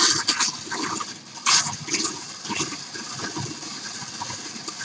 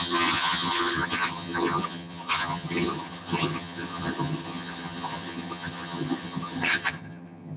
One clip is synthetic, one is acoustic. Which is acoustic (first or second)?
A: first